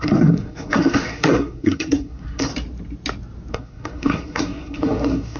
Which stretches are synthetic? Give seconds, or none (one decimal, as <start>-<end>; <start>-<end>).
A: 0.0-2.5; 3.5-5.4